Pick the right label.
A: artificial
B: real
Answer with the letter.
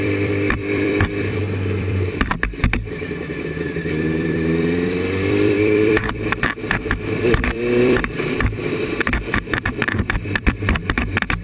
A